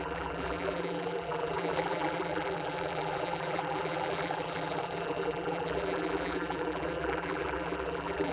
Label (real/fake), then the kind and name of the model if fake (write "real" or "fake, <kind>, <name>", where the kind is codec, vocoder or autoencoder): fake, vocoder, BigVGAN v2